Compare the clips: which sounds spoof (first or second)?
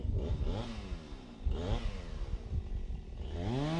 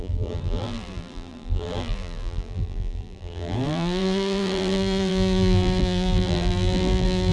second